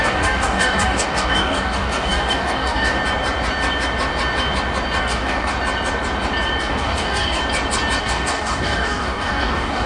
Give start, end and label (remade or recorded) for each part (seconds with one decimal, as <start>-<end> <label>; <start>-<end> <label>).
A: 0.0-3.0 remade; 3.0-5.0 recorded; 5.0-5.5 remade; 5.5-6.6 recorded; 6.6-7.4 remade; 7.4-8.0 recorded; 8.0-9.9 remade